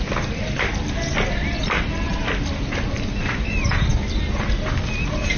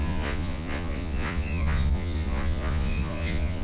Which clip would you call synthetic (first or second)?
second